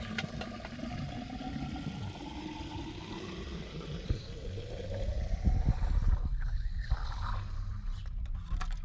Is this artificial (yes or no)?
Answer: no